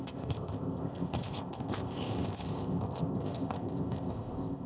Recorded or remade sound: remade